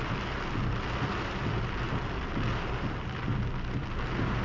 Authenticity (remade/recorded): recorded